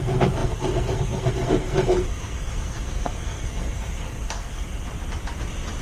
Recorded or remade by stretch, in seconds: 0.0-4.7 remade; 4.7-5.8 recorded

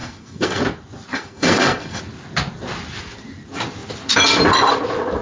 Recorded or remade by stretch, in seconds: 0.0-0.6 remade; 0.6-1.1 recorded; 1.1-2.0 remade; 2.0-5.2 recorded

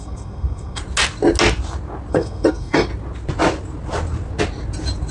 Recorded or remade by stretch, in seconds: 0.0-0.8 remade; 0.8-2.1 recorded; 2.1-2.9 remade; 2.9-5.1 recorded

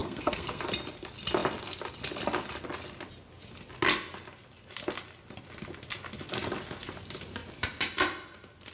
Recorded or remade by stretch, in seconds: 0.0-0.6 remade; 0.6-8.7 recorded

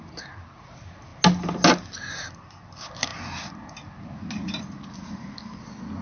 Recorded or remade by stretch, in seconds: 0.0-6.0 recorded

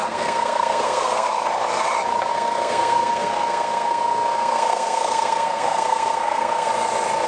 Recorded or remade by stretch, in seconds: 0.0-1.3 remade; 1.3-2.3 recorded; 2.3-6.7 remade; 6.7-7.3 recorded